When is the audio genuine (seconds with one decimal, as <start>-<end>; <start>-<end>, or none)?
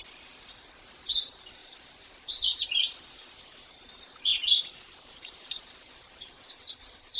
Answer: 0.0-1.6; 3.9-4.3; 6.2-7.2